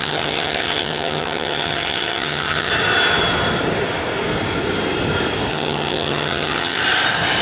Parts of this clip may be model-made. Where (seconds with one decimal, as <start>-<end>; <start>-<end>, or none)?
0.0-2.7; 5.5-6.8